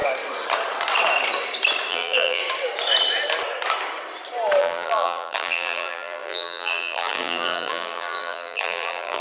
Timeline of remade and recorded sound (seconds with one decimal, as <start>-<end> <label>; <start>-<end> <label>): 0.0-1.9 recorded; 1.9-2.4 remade; 2.4-4.6 recorded; 4.6-9.2 remade